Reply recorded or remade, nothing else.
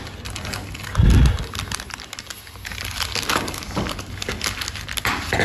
recorded